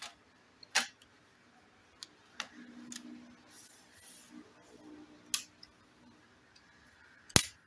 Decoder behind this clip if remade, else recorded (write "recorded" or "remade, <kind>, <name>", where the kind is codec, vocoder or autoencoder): recorded